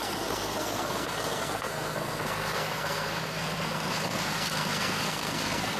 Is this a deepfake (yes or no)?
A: yes